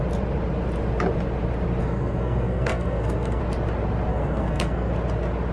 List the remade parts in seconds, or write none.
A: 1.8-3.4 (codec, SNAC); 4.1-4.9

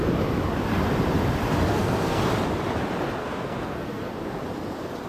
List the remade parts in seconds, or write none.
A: 1.7-2.2 (codec, SNAC); 3.2-4.1

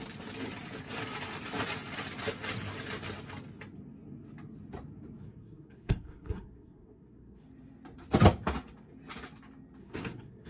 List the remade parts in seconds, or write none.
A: 5.2-7.4 (codec, SNAC); 9.8-10.5